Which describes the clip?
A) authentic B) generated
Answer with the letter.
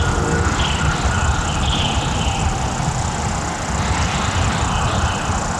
A